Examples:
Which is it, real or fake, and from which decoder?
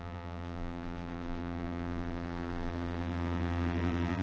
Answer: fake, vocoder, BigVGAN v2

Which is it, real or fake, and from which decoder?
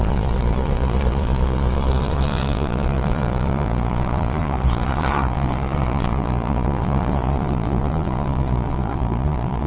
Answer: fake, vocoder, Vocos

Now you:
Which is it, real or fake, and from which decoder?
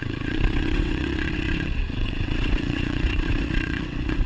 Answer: fake, vocoder, WaveNeXt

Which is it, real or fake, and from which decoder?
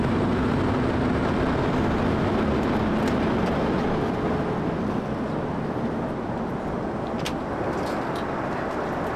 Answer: real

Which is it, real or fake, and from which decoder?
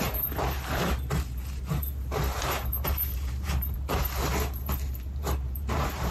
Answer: fake, vocoder, BigVGAN v2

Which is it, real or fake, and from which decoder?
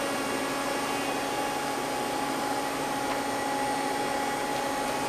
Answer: real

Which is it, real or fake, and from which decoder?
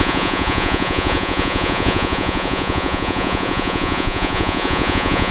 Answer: fake, vocoder, Vocos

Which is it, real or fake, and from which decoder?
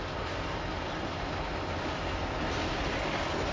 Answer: real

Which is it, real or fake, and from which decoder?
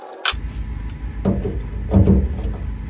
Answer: real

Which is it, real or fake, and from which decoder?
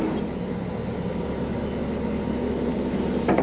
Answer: real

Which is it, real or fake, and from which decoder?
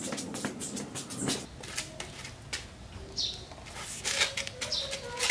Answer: real